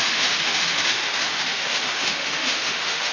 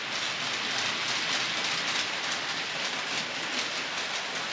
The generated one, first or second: first